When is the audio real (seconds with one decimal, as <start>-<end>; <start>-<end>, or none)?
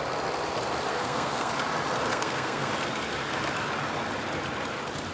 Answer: 0.0-0.9; 1.5-2.1; 2.7-5.1